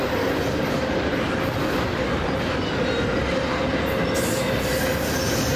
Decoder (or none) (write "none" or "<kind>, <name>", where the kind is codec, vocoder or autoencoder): none